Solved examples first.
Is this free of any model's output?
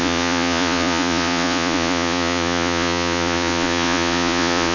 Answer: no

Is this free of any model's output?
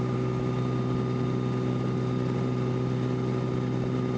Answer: yes